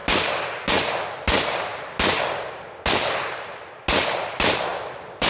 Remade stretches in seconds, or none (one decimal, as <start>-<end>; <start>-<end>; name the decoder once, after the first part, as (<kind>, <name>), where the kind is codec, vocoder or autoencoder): 4.7-5.3 (vocoder, BigVGAN v2)